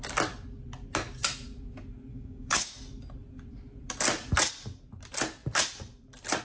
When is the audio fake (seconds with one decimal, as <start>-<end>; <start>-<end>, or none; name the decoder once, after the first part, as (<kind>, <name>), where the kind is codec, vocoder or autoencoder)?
2.1-2.7 (codec, DAC)